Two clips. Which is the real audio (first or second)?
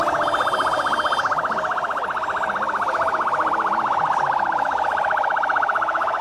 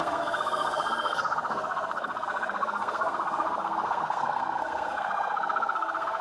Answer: first